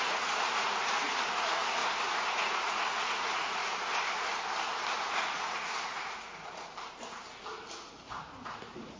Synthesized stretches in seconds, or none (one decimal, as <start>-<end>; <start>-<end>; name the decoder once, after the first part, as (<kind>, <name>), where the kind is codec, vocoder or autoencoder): 0.0-1.8 (vocoder, Vocos); 2.3-3.6; 4.9-6.7; 7.9-9.0